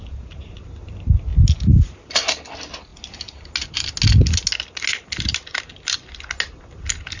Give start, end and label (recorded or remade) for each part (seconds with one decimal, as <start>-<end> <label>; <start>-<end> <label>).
0.0-7.2 recorded